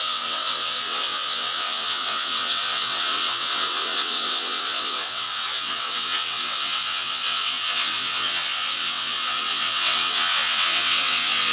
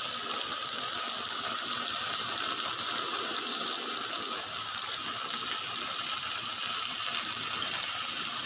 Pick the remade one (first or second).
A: first